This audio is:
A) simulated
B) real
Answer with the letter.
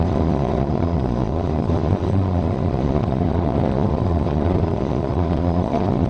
A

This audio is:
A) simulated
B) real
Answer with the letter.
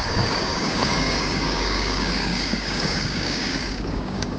A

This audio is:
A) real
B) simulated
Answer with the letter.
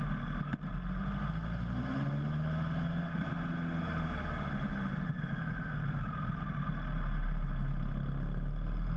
A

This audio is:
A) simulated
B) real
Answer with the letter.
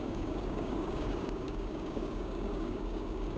A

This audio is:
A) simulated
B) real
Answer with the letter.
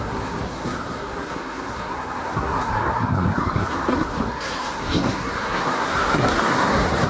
A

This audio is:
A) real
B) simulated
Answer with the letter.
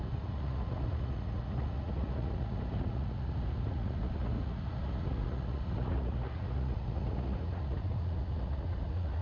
B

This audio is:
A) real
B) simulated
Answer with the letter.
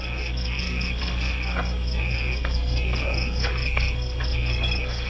B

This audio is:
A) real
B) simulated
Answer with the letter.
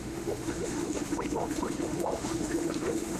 B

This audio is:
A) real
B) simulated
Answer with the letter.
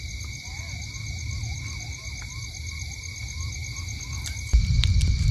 A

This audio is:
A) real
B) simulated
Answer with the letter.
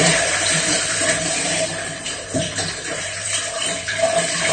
B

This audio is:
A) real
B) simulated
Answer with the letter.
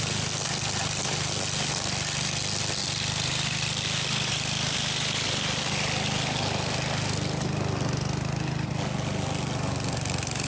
A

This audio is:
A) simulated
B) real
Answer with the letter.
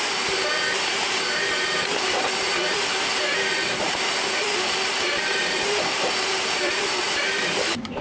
A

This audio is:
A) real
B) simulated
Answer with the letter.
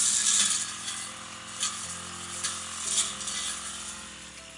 A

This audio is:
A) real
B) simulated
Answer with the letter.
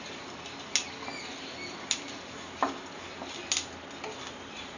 A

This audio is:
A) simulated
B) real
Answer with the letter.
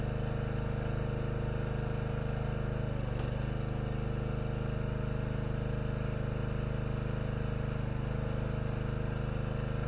B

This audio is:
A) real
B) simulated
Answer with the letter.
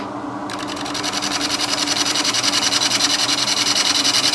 A